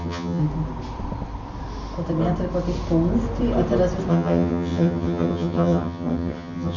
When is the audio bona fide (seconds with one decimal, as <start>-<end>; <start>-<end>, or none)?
0.4-4.1